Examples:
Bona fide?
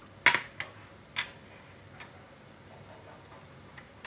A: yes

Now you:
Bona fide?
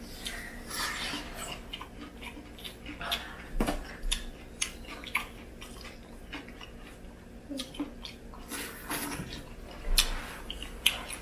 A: yes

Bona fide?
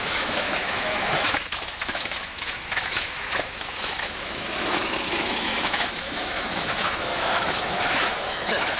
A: no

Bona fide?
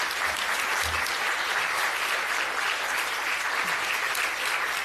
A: yes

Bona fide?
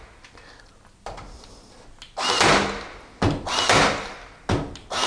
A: yes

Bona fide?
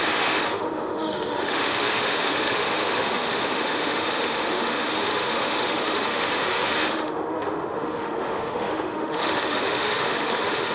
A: no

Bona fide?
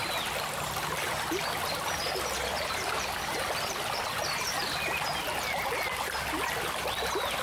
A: yes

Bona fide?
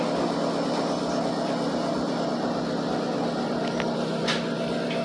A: yes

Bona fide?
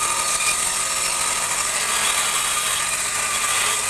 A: yes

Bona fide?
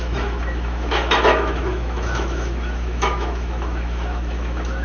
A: no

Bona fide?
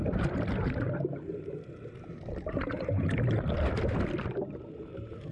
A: yes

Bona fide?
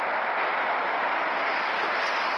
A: yes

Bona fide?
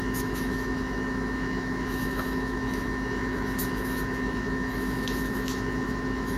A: no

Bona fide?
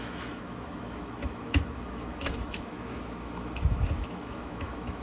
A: no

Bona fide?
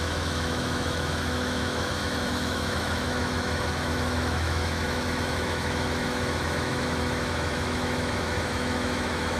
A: no